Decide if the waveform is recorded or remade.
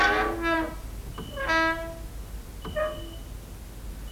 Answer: recorded